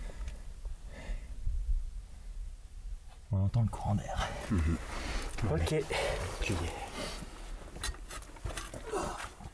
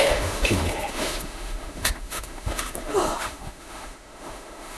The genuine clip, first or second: first